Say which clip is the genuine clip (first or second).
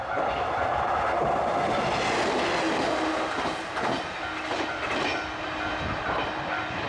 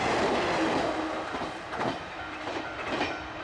first